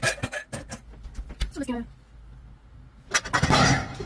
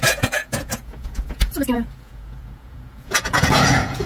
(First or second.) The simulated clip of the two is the second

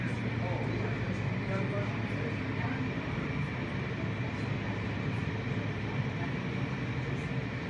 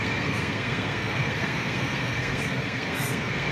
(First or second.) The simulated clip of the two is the second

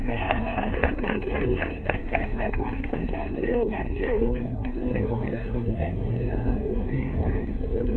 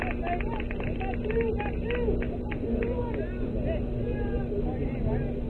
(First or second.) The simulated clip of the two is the first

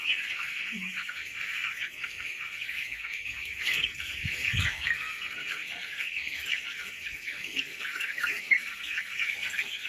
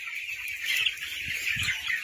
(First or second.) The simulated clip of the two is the first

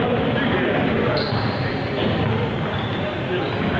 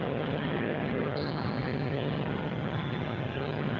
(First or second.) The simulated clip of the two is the second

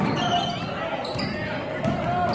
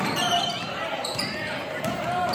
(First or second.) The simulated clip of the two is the second